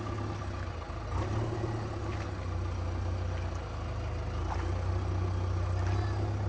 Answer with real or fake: real